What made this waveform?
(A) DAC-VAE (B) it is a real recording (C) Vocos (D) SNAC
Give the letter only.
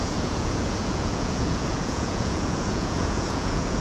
C